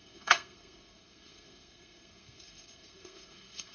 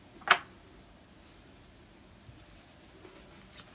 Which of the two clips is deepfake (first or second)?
first